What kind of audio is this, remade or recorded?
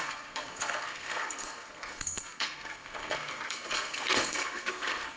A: remade